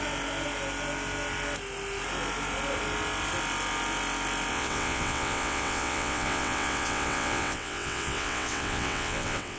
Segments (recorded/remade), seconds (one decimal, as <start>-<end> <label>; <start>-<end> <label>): 0.0-4.5 recorded; 4.5-9.6 remade